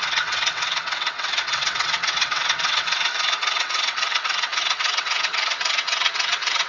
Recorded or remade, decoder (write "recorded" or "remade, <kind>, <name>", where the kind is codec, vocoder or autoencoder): remade, vocoder, WaveNeXt